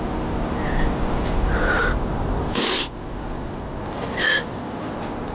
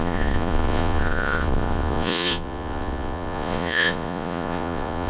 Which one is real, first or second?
first